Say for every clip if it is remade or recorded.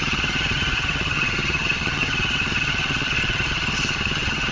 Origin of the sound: remade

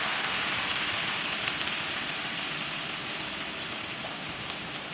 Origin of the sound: recorded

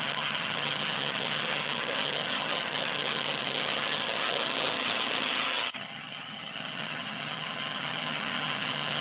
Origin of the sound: remade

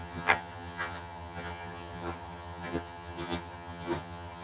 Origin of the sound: remade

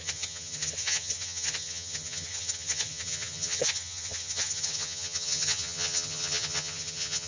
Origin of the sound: remade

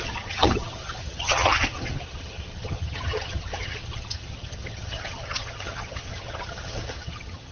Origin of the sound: remade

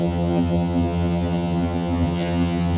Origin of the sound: remade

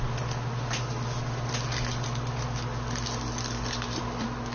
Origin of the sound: recorded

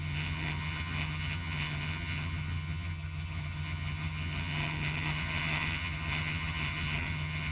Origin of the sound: remade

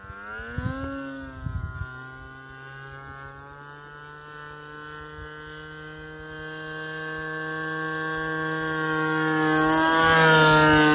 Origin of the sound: recorded